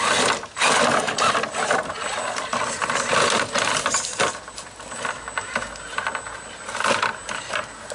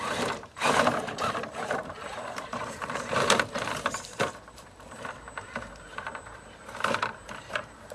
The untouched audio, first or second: first